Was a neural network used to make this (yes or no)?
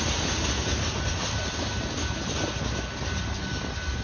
no